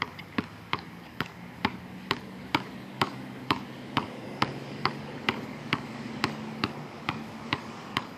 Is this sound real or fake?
fake